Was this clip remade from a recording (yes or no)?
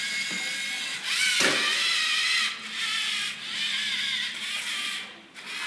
no